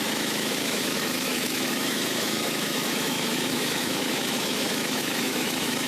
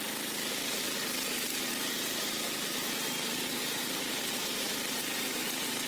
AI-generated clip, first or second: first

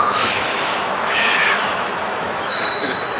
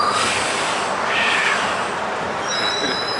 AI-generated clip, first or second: first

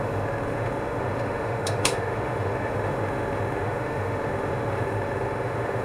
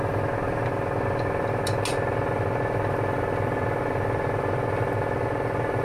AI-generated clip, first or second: first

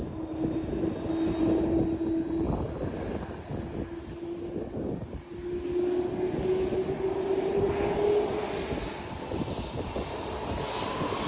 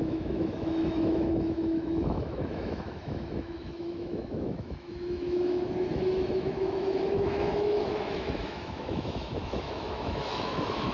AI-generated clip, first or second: second